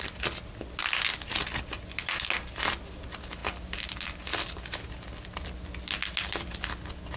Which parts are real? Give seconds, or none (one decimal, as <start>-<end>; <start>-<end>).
0.0-7.2